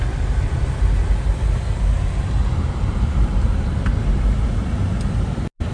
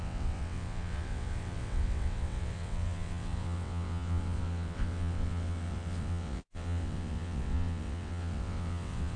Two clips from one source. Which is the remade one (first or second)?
second